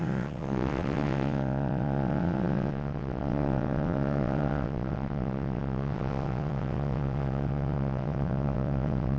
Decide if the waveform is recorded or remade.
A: remade